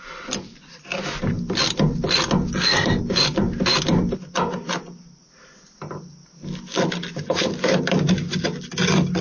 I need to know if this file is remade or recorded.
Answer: recorded